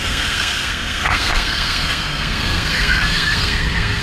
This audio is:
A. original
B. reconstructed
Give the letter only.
B